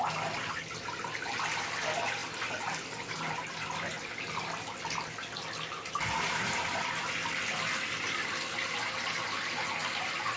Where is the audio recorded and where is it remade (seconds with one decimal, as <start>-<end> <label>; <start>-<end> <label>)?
0.0-10.4 recorded